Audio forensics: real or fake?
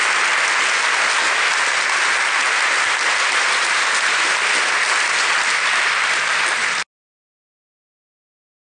real